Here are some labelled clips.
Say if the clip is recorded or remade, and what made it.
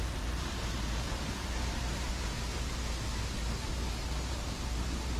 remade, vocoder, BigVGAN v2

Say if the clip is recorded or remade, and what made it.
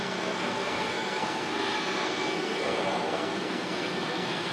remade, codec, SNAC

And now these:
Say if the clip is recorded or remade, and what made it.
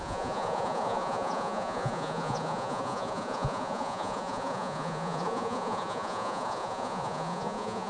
remade, vocoder, Vocos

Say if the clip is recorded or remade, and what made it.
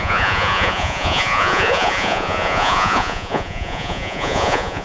remade, vocoder, Vocos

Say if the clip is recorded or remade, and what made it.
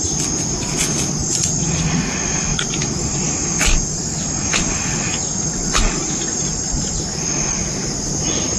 recorded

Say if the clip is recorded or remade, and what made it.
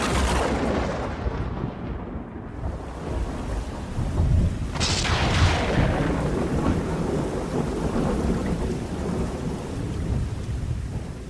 recorded